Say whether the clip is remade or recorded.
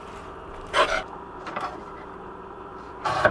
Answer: remade